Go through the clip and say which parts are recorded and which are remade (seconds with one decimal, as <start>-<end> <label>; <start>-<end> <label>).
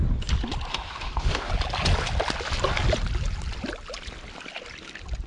0.0-0.7 recorded; 0.7-1.5 remade; 1.5-5.3 recorded